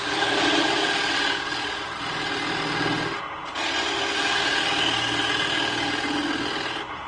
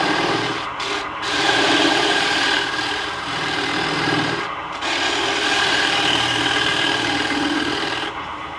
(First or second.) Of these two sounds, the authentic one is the first